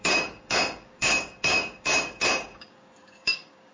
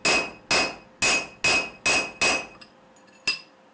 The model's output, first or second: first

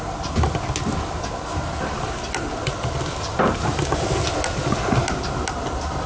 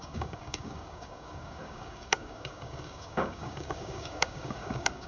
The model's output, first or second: second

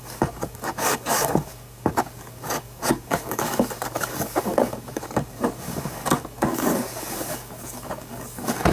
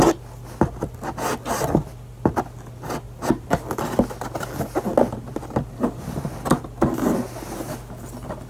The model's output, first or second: first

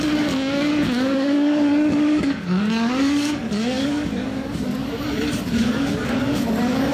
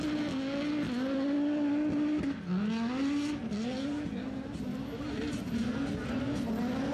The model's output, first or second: first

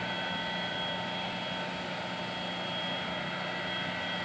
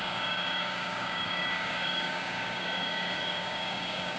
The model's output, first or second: second